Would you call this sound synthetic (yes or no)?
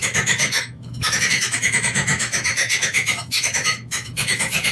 yes